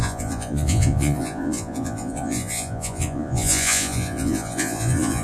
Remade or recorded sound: remade